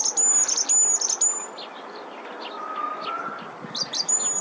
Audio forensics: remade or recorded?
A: recorded